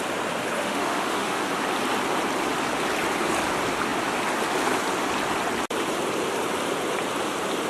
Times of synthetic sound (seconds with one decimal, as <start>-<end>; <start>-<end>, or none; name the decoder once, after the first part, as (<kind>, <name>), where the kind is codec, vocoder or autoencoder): 0.6-1.4 (autoencoder, DAC-VAE)